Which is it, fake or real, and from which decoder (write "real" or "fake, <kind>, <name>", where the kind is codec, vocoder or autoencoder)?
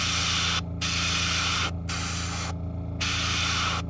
real